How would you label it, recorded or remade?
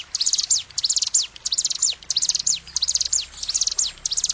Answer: recorded